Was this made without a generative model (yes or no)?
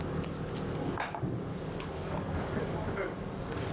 no